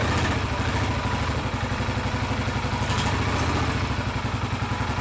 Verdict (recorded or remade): recorded